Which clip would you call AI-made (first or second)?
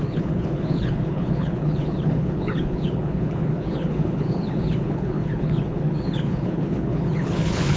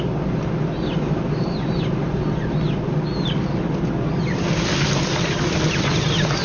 first